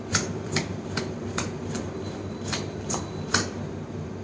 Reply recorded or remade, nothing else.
remade